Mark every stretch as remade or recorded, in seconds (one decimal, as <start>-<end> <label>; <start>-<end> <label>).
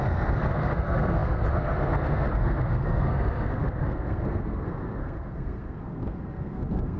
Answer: 0.0-7.0 remade